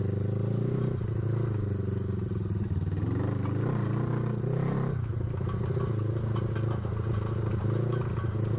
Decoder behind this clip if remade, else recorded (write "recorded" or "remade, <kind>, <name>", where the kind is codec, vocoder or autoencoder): recorded